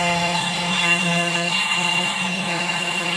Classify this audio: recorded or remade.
remade